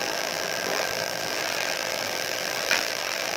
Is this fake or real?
fake